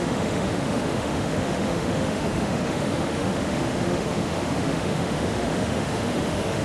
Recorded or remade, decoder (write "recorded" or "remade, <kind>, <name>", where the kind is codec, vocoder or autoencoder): remade, autoencoder, DAC-VAE